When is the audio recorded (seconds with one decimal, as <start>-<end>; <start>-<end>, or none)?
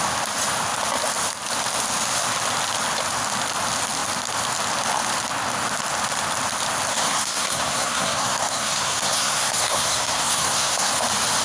0.0-6.9; 10.9-11.4